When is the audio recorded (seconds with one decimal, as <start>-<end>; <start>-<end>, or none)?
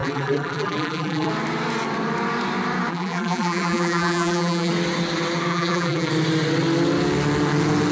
1.3-2.9; 4.7-5.5; 6.1-7.9